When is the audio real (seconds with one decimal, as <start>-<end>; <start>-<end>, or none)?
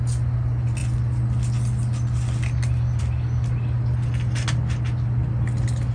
0.0-5.9